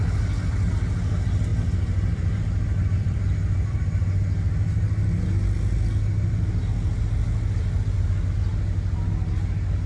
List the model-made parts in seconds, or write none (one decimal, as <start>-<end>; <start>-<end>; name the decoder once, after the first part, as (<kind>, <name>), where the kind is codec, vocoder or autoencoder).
1.5-3.8 (vocoder, BigVGAN v2)